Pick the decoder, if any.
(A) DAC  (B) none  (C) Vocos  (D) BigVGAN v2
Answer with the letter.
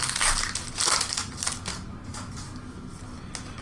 B